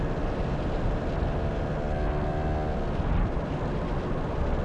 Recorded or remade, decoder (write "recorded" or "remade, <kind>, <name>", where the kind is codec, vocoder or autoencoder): recorded